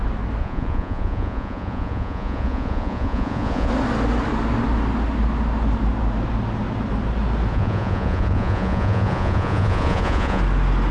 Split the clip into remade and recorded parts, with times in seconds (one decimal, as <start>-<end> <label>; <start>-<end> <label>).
0.0-0.4 recorded; 0.4-3.7 remade; 3.7-7.5 recorded; 7.5-10.4 remade; 10.4-10.9 recorded